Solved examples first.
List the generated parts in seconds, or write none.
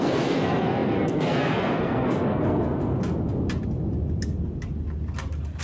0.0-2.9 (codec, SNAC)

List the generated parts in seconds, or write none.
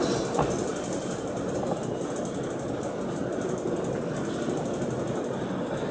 0.7-1.6 (vocoder, BigVGAN v2); 3.2-4.6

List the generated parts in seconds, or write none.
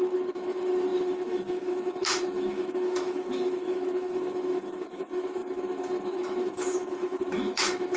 0.0-8.0 (autoencoder, DAC-VAE)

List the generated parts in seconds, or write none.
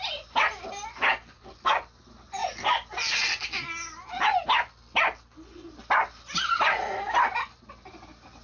none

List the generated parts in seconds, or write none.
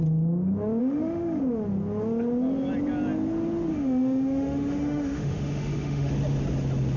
0.8-1.4 (autoencoder, DAC-VAE); 3.7-6.1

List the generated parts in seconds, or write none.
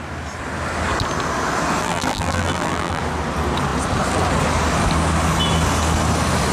1.8-3.0 (vocoder, BigVGAN v2)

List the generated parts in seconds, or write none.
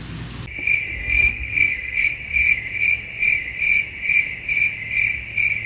1.0-2.1 (codec, SNAC)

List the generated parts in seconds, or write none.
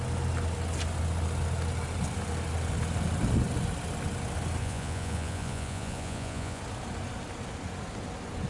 4.6-6.6 (vocoder, Vocos)